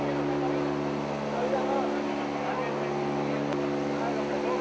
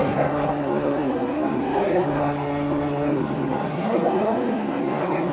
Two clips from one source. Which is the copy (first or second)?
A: second